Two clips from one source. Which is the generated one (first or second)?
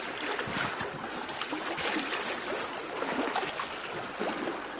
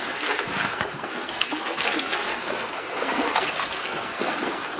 second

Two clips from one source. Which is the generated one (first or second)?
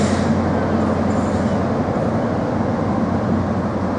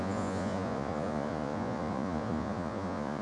second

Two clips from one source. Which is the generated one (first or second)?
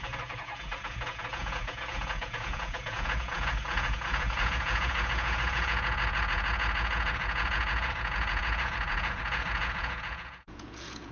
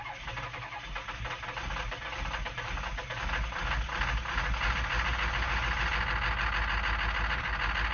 first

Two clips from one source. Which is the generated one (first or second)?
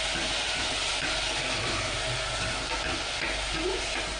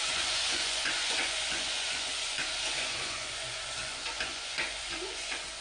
second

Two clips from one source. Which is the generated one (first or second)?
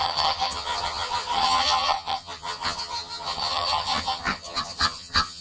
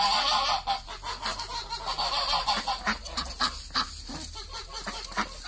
first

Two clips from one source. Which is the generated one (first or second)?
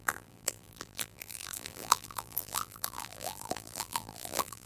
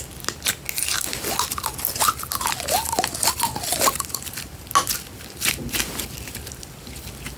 first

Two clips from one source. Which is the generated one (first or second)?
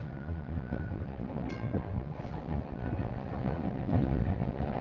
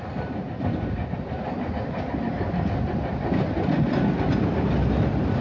first